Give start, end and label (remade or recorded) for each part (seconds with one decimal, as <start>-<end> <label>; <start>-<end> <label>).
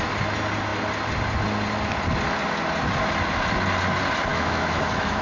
0.0-4.3 recorded; 4.3-5.2 remade